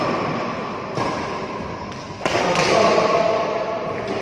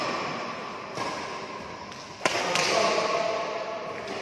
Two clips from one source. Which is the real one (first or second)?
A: second